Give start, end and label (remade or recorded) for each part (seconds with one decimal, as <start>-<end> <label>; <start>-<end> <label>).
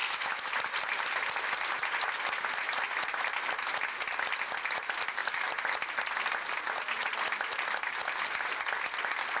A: 0.0-0.5 remade; 0.5-9.4 recorded